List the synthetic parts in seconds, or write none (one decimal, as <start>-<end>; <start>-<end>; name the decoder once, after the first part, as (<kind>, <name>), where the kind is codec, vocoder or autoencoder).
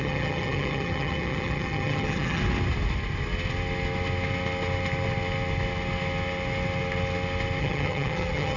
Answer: 0.0-2.4 (vocoder, HiFi-GAN); 7.6-8.6